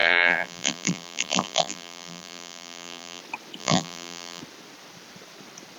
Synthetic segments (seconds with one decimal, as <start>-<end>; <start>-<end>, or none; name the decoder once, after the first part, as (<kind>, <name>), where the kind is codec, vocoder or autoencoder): 0.0-3.2 (vocoder, BigVGAN v2); 3.6-4.4